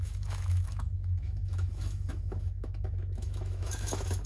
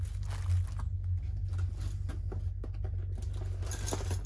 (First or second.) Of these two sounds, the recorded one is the second